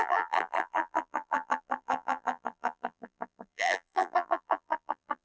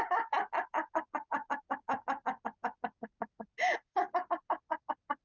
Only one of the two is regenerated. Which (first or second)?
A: first